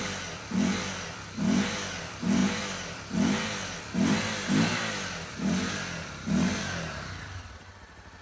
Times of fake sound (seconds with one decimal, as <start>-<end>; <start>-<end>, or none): none